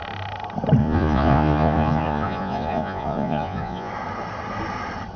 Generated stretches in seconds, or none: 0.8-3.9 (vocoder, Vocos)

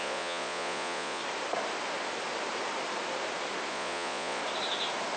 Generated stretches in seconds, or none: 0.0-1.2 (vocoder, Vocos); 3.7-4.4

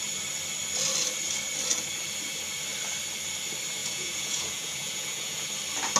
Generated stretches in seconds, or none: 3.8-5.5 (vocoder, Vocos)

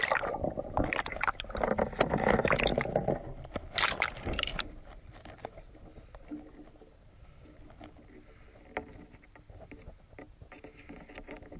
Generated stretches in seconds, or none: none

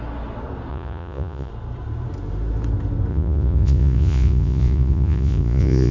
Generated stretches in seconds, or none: 0.7-1.5 (vocoder, Vocos); 3.1-5.9

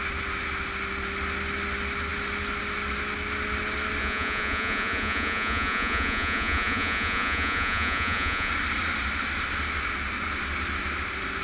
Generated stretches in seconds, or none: 4.0-8.5 (vocoder, Vocos)

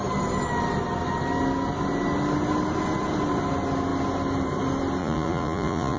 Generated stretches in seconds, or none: 5.0-6.0 (vocoder, Vocos)